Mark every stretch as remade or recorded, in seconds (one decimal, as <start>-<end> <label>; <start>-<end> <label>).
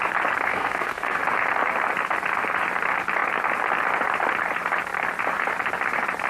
0.0-0.5 recorded; 0.5-1.2 remade; 1.2-6.3 recorded